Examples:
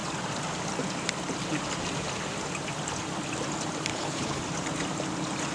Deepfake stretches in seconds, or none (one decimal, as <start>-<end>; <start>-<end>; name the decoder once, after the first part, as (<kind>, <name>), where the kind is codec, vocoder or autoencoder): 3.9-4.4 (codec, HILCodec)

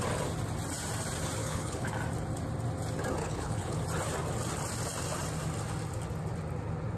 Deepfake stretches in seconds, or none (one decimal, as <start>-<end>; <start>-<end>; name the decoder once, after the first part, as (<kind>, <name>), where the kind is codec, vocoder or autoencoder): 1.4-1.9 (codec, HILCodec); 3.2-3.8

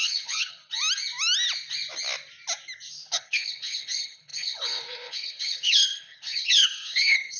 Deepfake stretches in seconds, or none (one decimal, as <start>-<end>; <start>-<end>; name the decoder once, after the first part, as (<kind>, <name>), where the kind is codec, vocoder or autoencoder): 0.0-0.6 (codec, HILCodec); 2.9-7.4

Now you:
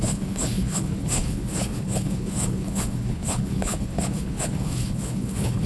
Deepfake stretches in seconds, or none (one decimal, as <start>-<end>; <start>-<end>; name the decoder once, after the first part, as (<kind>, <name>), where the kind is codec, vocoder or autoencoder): 0.0-5.7 (codec, HILCodec)